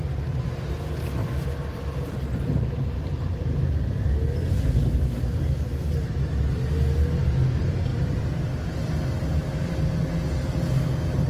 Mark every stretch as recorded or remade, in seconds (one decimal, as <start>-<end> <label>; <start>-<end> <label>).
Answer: 0.0-1.2 recorded; 1.2-1.8 remade; 1.8-7.9 recorded; 7.9-8.6 remade; 8.6-11.3 recorded